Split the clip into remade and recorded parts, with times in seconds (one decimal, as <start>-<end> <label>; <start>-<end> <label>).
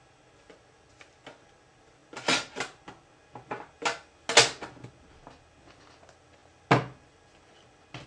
0.0-8.1 recorded